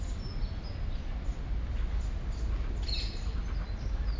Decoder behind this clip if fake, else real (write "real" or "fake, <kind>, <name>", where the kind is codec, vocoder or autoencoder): real